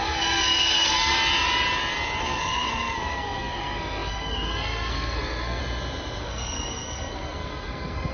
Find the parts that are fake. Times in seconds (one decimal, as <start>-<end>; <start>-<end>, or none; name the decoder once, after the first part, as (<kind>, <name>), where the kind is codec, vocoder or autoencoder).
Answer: 0.0-1.1 (codec, SNAC); 2.2-5.6; 6.2-8.1